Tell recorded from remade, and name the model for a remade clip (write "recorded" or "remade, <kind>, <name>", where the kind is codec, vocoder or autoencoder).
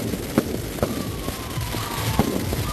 recorded